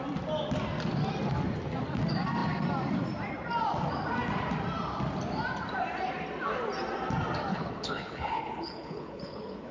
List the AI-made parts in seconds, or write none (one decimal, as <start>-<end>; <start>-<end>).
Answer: 7.5-9.7